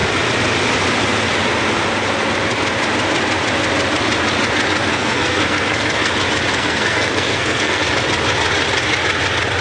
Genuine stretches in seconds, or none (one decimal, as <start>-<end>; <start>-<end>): 0.0-4.9; 6.1-6.5; 7.9-9.6